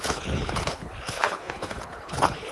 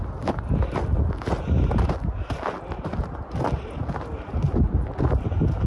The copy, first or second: first